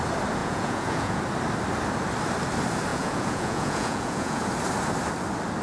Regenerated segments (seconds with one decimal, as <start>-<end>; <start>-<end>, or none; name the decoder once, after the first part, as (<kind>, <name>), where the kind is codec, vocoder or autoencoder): 0.4-1.2 (vocoder, Vocos); 2.9-4.5